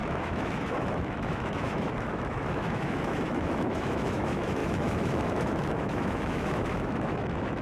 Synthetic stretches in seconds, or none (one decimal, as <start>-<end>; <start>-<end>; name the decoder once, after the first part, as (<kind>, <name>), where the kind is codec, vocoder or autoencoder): 0.0-7.6 (autoencoder, DAC-VAE)